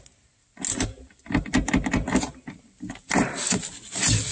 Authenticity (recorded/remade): recorded